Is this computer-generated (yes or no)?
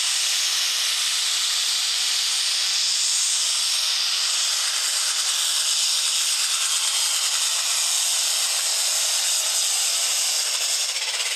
no